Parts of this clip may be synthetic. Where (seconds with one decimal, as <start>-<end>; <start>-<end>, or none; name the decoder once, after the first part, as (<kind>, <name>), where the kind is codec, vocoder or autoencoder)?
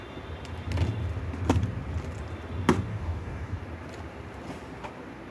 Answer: 2.9-3.6 (codec, DAC)